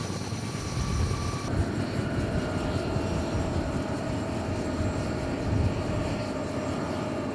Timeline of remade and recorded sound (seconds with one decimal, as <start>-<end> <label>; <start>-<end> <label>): 0.0-7.3 recorded